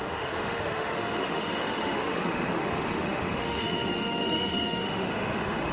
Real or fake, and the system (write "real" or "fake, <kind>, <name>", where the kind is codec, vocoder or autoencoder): fake, autoencoder, DAC-VAE